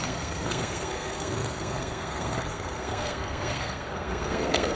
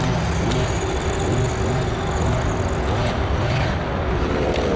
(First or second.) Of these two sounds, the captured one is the second